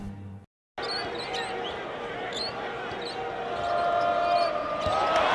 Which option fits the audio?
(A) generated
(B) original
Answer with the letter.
B